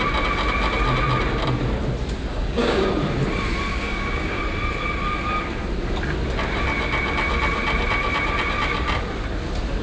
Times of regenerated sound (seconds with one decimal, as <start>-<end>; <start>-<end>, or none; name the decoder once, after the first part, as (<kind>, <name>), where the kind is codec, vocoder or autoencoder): 2.3-2.9 (codec, DAC); 3.7-4.4